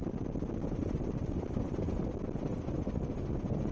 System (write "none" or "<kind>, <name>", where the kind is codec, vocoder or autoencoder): none